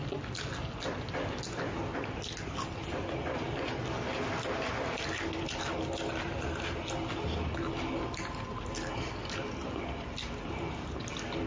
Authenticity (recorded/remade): recorded